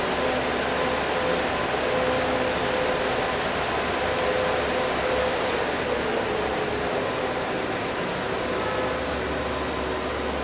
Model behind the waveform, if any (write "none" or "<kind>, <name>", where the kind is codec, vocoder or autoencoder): none